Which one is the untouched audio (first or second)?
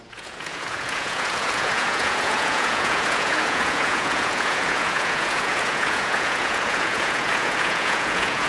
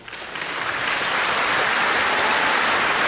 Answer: second